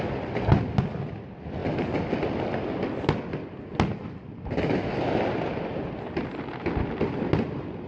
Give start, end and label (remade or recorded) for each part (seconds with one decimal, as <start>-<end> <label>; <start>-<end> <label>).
0.0-7.9 recorded